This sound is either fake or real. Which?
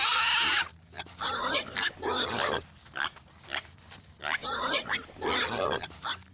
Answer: real